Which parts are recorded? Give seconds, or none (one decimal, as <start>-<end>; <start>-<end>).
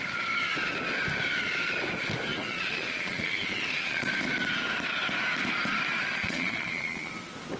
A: 0.0-2.3; 4.1-6.2; 7.1-7.6